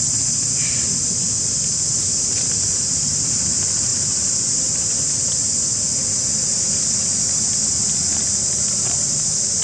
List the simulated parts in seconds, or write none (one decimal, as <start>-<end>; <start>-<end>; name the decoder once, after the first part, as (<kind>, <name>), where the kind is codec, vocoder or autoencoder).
none